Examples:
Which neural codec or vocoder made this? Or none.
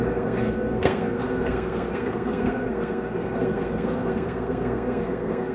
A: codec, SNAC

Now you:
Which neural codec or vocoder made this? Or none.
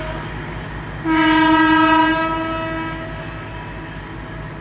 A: none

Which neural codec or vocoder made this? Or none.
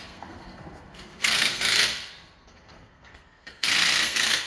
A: codec, SNAC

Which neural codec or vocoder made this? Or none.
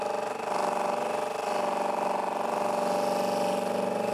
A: none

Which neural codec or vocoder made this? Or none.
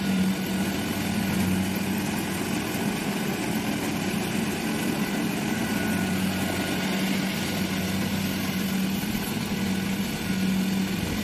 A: none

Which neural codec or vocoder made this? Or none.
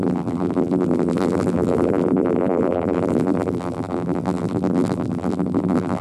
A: vocoder, BigVGAN v2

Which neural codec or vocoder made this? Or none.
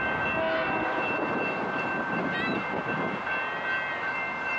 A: none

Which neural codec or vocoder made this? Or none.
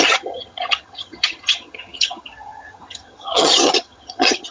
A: vocoder, HiFi-GAN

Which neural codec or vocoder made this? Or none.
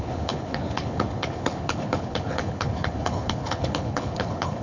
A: codec, HILCodec